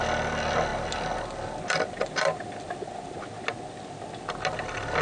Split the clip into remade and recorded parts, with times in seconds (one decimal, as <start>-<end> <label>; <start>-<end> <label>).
0.0-5.0 recorded